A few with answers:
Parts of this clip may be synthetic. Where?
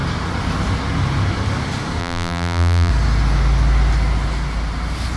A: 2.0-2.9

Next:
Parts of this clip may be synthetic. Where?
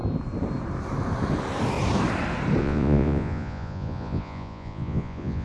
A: 2.6-5.4